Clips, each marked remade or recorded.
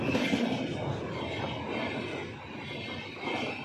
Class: recorded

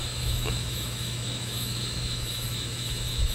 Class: remade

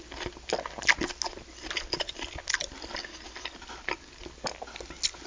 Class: recorded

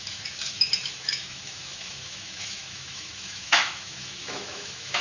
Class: remade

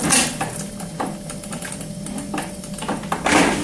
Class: recorded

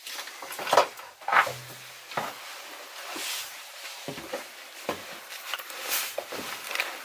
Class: recorded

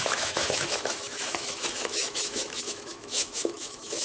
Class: remade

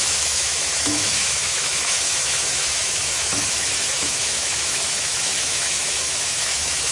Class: remade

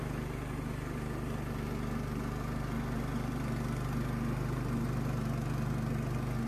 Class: recorded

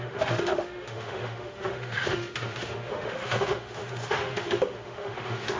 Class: remade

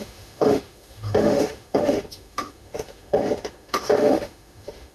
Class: remade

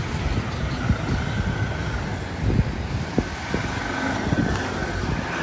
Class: recorded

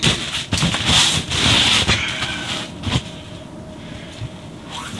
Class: recorded